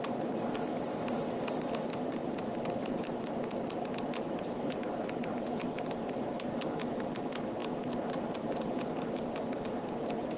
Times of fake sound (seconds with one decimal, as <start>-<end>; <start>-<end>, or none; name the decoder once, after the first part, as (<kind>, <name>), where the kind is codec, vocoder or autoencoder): 2.2-5.5 (vocoder, BigVGAN v2); 7.6-8.7